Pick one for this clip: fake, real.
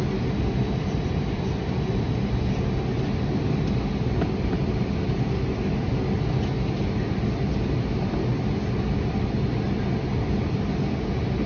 real